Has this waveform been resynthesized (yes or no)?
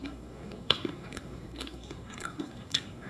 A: yes